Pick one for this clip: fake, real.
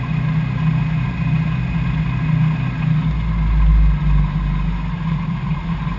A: real